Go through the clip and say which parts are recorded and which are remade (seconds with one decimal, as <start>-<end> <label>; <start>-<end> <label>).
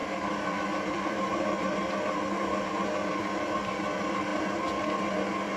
0.0-2.7 remade; 2.7-5.6 recorded